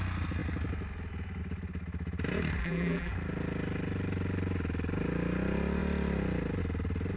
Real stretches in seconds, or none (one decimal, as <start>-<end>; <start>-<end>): 0.0-2.6; 3.1-7.2